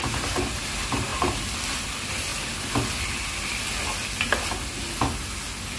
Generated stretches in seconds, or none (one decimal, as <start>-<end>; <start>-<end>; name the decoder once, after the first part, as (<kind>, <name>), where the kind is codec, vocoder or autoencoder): none